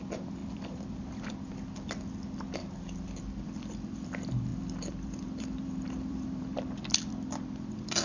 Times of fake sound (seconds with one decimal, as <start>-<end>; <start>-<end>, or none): 0.4-1.3; 2.6-4.1; 4.5-7.1

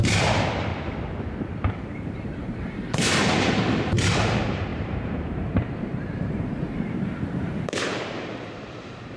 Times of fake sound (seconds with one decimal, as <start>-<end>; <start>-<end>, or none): 0.0-0.7; 1.9-9.2

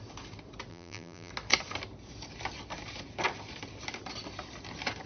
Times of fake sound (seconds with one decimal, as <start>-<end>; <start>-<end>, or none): 0.7-1.3

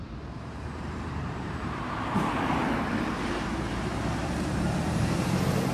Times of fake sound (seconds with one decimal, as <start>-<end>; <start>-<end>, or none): 0.0-2.6; 3.2-5.7

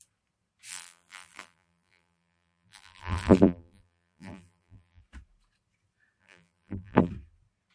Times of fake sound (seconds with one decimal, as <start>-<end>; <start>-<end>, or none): 0.7-5.0; 6.2-7.1